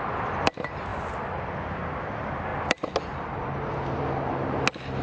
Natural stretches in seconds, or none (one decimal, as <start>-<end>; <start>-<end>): 0.0-5.0